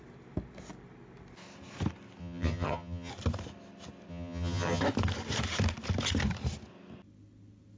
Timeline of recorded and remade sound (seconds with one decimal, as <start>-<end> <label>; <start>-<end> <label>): 0.0-2.2 recorded; 2.2-3.1 remade; 3.1-4.1 recorded; 4.1-4.8 remade; 4.8-7.8 recorded